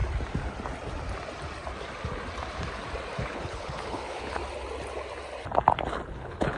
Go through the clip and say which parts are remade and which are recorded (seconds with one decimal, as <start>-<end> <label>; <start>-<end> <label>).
0.0-3.2 recorded; 3.2-4.4 remade; 4.4-6.1 recorded; 6.1-6.6 remade